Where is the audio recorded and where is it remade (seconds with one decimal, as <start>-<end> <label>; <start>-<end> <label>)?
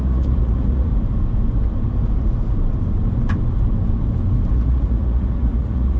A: 0.0-0.9 remade; 0.9-4.5 recorded; 4.5-6.0 remade